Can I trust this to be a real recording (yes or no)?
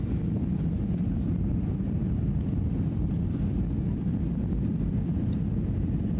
no